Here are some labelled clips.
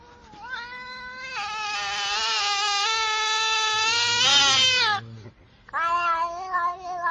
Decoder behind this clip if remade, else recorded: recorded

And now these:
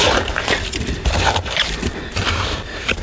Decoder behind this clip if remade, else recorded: remade, vocoder, BigVGAN v2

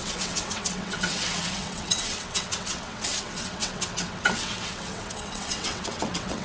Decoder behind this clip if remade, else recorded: remade, vocoder, WaveNeXt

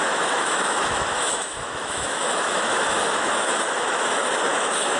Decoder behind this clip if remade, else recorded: remade, autoencoder, DAC-VAE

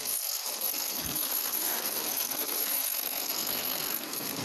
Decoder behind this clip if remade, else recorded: remade, codec, SNAC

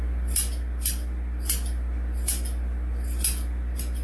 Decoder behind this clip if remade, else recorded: recorded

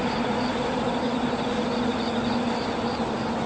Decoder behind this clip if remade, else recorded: recorded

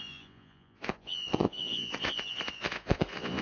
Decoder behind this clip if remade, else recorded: remade, vocoder, Vocos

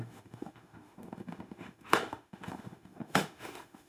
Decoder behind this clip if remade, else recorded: remade, autoencoder, DAC-VAE